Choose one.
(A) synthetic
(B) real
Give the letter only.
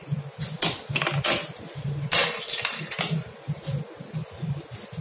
B